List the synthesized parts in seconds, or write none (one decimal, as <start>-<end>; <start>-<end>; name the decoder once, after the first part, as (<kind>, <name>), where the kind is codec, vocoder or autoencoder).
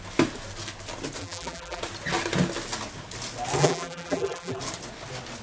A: 1.2-1.8 (vocoder, BigVGAN v2); 3.6-4.6